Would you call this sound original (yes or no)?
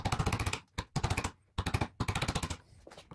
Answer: yes